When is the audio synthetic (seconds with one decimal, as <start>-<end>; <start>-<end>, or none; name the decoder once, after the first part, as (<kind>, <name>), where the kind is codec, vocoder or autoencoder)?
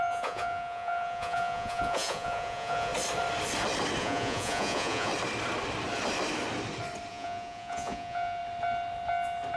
0.0-2.9 (vocoder, Vocos); 4.0-5.1; 7.1-8.4